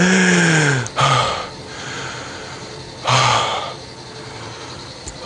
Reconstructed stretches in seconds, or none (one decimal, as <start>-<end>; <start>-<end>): none